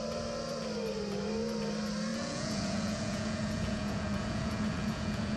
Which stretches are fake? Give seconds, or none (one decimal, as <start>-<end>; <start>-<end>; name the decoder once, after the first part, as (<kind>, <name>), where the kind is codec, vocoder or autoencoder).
2.1-5.4 (vocoder, Vocos)